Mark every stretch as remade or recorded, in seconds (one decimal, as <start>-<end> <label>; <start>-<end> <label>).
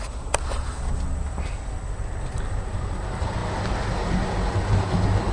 0.0-5.3 recorded